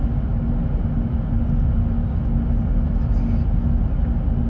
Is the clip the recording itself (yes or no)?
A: yes